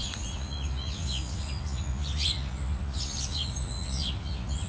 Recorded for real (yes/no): no